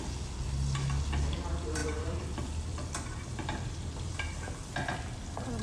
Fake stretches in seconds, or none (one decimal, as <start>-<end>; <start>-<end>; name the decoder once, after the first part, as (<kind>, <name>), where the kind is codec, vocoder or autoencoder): 1.8-5.6 (vocoder, BigVGAN v2)